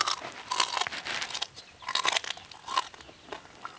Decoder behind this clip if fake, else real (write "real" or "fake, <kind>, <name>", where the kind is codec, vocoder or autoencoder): real